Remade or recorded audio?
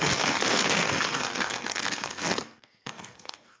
remade